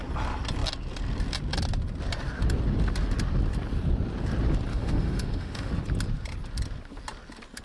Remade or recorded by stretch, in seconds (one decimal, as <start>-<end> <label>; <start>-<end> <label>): 0.0-4.7 recorded; 4.7-5.7 remade; 5.7-7.6 recorded